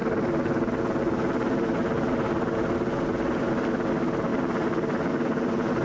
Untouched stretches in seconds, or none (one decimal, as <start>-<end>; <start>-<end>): 0.0-5.8